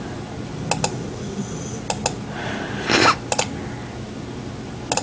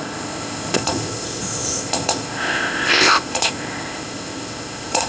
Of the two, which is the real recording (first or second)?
first